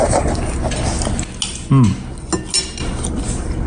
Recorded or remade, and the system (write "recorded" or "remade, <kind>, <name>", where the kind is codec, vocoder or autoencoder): recorded